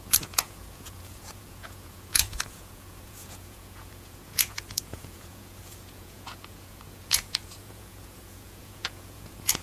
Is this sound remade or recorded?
remade